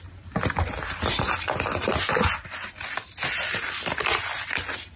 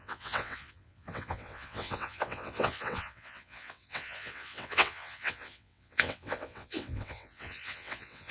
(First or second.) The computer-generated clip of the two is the second